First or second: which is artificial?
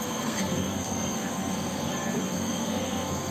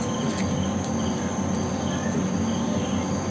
first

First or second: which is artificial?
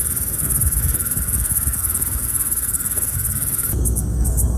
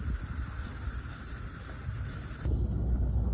first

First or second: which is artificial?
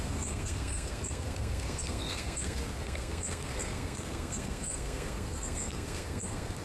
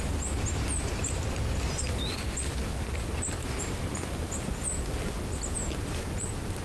first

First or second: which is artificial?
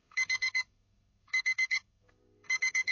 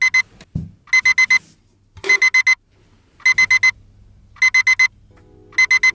first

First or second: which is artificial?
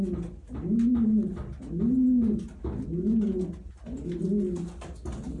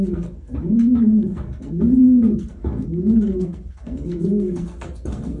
second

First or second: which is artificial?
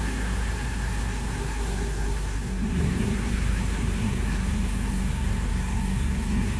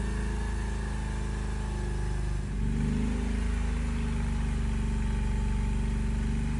first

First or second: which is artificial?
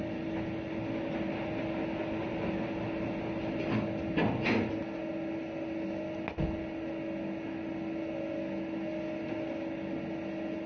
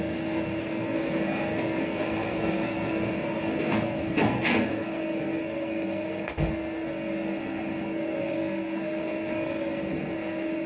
second